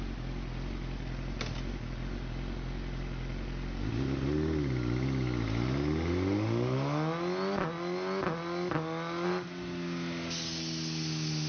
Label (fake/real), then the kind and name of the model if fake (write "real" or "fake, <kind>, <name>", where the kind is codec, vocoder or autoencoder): real